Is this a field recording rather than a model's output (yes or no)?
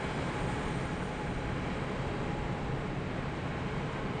yes